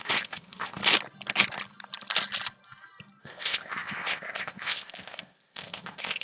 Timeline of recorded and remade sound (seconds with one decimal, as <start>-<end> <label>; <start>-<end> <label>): 0.0-0.8 remade; 0.8-3.2 recorded; 3.2-6.2 remade